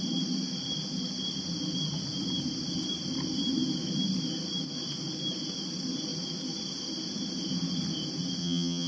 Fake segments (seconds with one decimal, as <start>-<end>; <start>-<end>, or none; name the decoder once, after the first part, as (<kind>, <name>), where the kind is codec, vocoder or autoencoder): 8.4-8.9 (vocoder, HiFi-GAN)